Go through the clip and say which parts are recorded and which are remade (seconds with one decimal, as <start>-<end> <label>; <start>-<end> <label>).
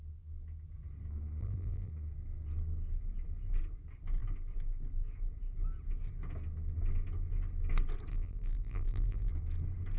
0.0-1.4 recorded; 1.4-1.9 remade; 1.9-8.1 recorded; 8.1-9.3 remade; 9.3-10.0 recorded